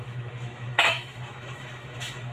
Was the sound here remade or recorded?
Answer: remade